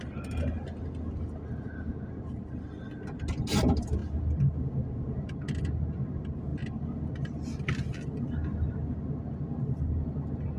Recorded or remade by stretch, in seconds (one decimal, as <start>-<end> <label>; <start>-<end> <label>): 0.0-10.6 recorded